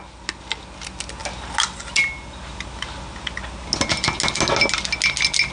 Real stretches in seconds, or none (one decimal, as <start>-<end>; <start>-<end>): 0.0-5.5